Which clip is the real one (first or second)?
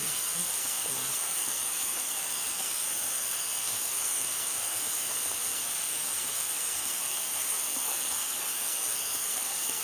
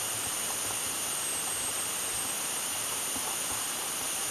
second